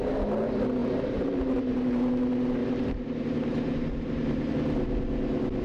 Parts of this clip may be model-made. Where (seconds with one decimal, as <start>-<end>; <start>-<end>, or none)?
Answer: 0.8-2.1; 2.6-4.5